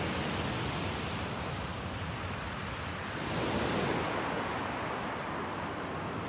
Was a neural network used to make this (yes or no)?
no